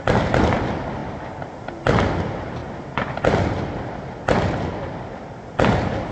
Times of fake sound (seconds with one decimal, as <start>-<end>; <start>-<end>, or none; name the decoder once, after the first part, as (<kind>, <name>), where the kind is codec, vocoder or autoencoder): none